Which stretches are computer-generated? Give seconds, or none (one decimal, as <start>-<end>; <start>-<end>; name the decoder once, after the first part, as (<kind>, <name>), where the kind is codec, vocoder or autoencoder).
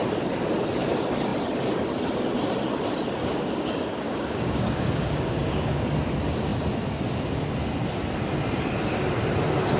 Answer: 3.2-5.9 (codec, DAC)